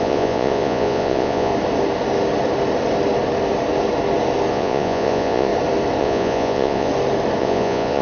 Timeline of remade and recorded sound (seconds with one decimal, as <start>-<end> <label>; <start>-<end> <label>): 0.0-1.5 remade; 1.5-4.5 recorded; 4.5-5.5 remade; 5.5-6.0 recorded; 6.0-6.9 remade; 6.9-7.4 recorded; 7.4-8.0 remade